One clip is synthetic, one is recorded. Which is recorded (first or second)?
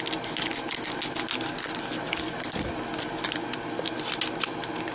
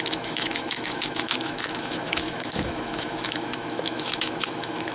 first